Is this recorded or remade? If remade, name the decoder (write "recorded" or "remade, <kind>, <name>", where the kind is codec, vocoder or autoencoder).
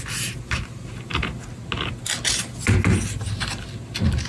recorded